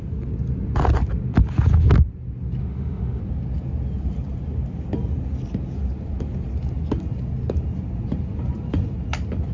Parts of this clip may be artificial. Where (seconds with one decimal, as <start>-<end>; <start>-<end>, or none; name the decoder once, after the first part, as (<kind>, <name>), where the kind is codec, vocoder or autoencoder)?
2.6-3.2 (autoencoder, DAC-VAE)